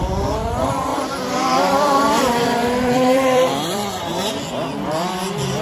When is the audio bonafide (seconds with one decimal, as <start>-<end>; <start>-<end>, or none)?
0.0-0.9; 4.3-5.6